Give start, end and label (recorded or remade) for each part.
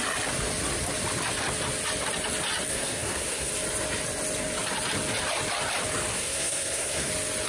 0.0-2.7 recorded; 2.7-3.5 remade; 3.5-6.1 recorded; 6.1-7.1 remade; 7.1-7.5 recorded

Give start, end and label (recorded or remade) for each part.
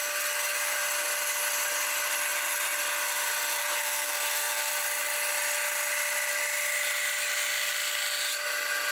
0.0-3.6 recorded; 3.6-4.7 remade; 4.7-8.9 recorded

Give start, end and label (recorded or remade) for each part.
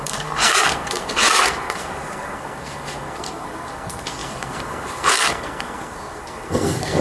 0.0-7.0 remade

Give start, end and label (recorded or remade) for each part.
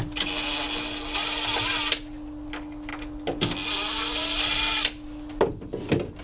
0.0-6.2 recorded